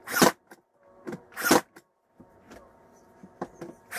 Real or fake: real